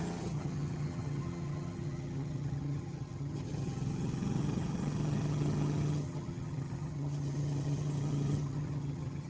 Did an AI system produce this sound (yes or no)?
yes